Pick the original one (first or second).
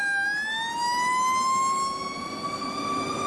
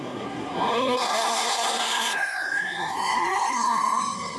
first